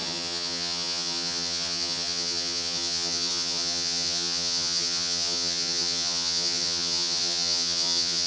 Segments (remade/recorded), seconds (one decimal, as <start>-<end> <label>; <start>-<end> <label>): 0.0-8.3 remade